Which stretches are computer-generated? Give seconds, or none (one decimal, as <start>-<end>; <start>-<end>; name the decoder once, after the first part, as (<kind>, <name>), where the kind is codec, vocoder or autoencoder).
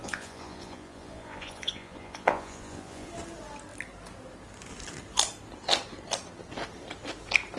0.0-3.1 (vocoder, Vocos)